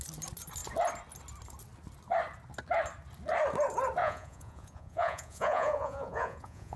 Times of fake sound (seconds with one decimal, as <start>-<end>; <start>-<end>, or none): 4.0-6.8